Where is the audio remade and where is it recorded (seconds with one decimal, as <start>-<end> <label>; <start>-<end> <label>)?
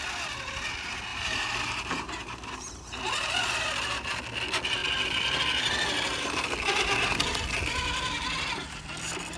0.0-1.1 recorded; 1.1-4.1 remade; 4.1-9.4 recorded